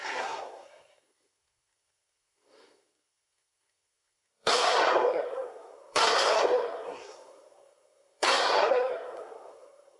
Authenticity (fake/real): fake